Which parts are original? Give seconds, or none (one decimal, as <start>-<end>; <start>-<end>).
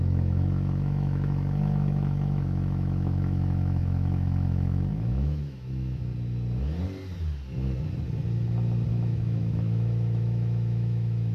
6.1-8.9